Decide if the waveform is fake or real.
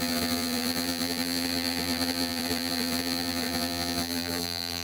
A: fake